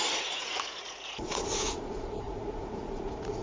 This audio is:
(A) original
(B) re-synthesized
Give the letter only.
B